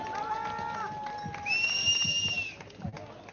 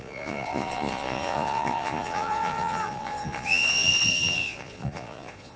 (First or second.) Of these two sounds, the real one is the first